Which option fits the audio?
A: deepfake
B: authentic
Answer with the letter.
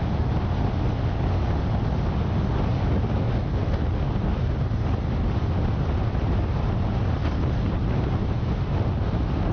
B